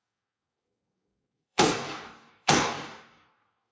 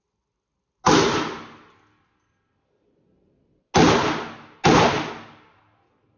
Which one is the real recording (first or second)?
second